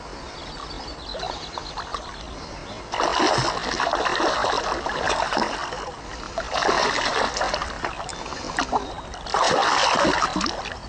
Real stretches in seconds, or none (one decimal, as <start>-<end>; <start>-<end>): 0.0-10.9